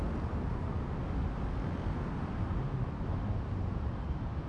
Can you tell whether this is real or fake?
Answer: real